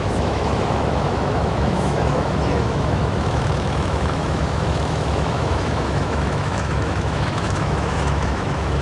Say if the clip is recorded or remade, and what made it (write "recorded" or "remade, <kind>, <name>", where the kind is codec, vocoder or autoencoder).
remade, autoencoder, DAC-VAE